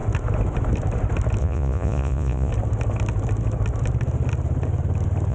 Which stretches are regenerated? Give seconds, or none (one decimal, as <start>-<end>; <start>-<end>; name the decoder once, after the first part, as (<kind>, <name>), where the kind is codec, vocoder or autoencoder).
1.4-2.5 (vocoder, Vocos)